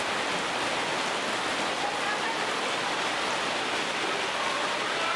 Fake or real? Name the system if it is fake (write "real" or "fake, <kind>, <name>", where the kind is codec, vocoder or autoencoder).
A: real